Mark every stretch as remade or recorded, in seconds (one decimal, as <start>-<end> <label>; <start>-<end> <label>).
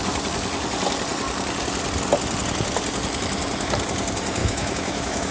0.0-4.4 recorded; 4.4-5.3 remade